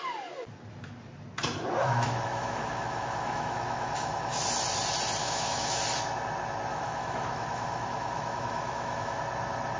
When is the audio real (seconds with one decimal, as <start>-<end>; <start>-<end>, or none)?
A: 0.0-1.8; 4.4-5.2; 5.8-6.7; 9.2-9.8